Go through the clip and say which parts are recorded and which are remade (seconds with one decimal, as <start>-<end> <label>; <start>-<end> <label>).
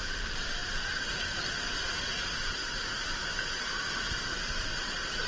0.0-2.6 recorded; 2.6-3.6 remade; 3.6-5.3 recorded